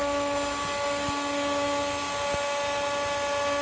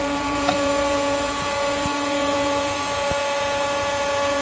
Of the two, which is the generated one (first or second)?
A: second